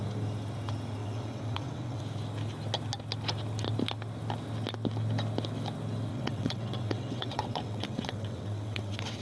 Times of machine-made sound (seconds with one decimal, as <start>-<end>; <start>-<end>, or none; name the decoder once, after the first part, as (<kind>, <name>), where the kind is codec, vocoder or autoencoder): 1.0-2.0 (vocoder, WaveNeXt); 6.1-9.2